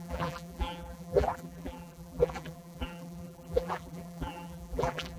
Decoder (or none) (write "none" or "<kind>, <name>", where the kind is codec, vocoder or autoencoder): vocoder, BigVGAN v2